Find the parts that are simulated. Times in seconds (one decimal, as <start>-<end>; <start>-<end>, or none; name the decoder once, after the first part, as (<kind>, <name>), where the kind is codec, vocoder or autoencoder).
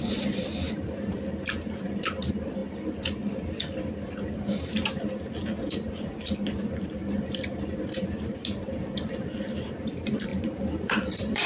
10.3-11.5 (vocoder, BigVGAN v2)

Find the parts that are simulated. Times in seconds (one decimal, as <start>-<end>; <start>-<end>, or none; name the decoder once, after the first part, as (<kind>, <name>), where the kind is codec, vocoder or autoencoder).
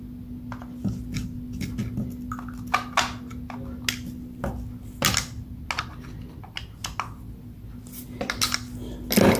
none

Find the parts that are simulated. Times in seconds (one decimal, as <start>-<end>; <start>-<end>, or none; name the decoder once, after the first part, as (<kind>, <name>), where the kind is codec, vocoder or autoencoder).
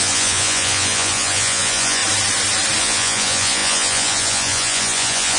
0.0-2.0 (vocoder, Vocos); 2.8-5.4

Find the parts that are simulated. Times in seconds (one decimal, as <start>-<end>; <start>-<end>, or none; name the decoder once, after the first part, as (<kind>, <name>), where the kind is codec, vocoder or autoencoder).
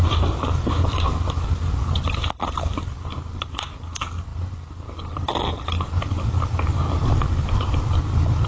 none